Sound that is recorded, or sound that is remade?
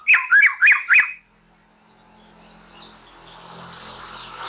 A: recorded